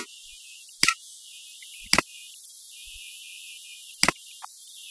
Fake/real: real